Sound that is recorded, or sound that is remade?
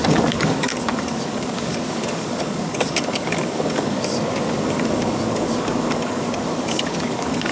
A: remade